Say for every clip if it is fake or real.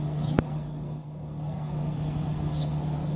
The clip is fake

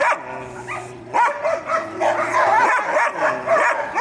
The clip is real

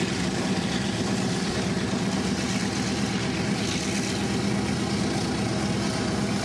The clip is real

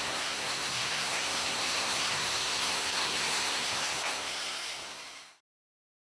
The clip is fake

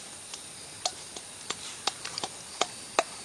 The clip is real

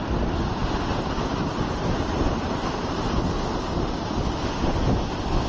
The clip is real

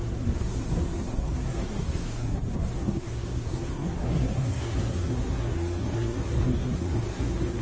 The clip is fake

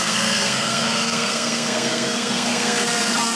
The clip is fake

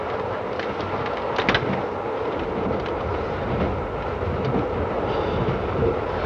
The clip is real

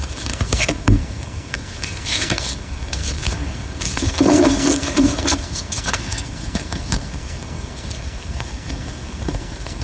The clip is fake